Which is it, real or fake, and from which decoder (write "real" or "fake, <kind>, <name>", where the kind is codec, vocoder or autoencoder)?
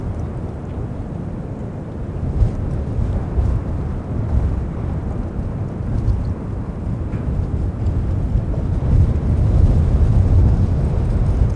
real